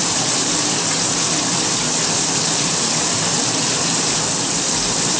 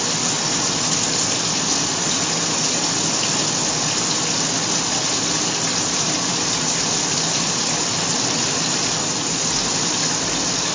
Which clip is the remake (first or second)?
first